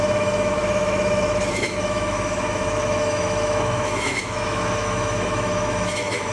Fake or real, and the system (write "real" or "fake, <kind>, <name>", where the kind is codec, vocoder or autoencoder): fake, autoencoder, DAC-VAE